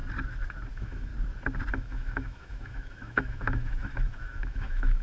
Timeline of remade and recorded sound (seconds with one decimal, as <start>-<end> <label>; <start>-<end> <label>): 0.0-0.7 recorded; 0.7-1.1 remade; 1.1-1.7 recorded; 1.7-5.0 remade